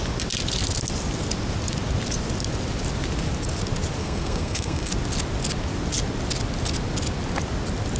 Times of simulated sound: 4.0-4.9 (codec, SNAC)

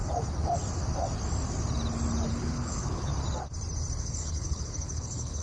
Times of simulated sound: 2.3-3.1 (codec, HILCodec); 4.0-5.4

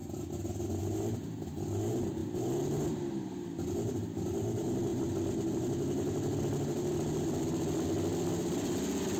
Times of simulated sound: 2.2-3.0 (vocoder, BigVGAN v2); 4.9-6.4

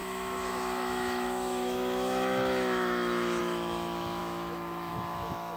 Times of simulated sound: 0.0-5.6 (autoencoder, DAC-VAE)

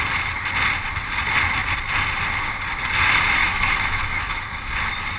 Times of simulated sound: 3.4-4.7 (autoencoder, DAC-VAE)